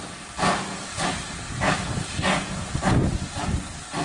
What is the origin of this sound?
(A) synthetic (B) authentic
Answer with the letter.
B